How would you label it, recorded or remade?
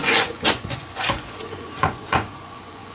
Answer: remade